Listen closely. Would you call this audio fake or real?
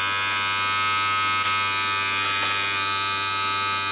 real